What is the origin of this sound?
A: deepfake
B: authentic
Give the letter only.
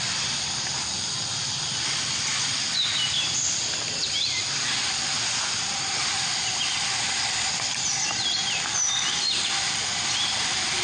A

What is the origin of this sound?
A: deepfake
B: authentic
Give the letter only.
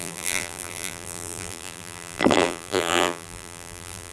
A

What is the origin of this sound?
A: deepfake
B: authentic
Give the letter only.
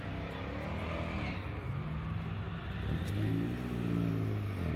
B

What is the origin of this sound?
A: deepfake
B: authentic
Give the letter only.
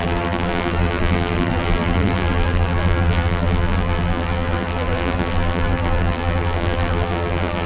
A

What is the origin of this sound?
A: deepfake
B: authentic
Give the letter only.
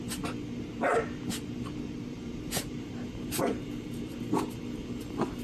A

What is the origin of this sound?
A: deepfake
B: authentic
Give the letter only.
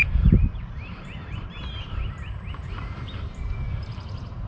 A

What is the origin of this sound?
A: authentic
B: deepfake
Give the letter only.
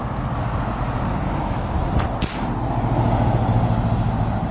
A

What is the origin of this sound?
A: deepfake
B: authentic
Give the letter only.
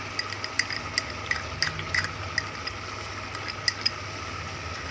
B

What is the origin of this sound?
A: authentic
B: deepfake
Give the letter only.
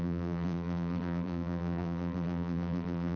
B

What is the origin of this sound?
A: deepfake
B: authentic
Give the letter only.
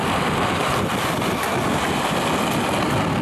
B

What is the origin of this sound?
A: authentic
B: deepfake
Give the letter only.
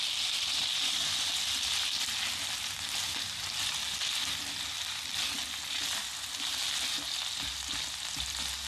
A